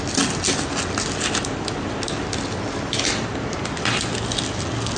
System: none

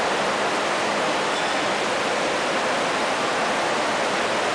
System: none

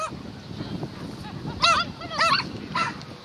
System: none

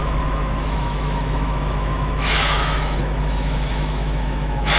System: autoencoder, DAC-VAE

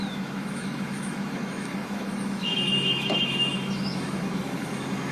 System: autoencoder, DAC-VAE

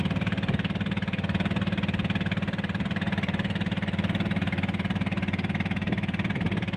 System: none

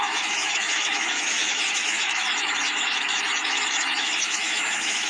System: autoencoder, DAC-VAE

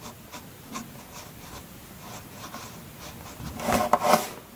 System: none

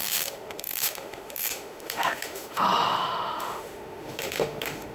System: autoencoder, DAC-VAE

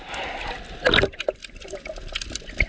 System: none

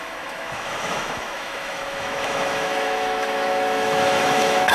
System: autoencoder, DAC-VAE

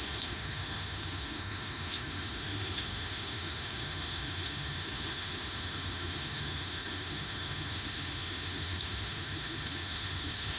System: autoencoder, DAC-VAE